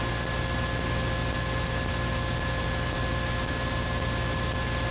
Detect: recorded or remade recorded